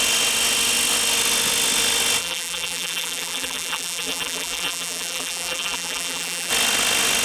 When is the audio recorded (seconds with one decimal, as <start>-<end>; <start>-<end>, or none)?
0.0-2.2; 6.5-7.2